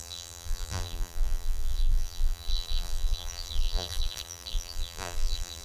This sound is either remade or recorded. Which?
remade